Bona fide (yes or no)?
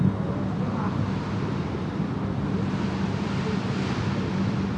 yes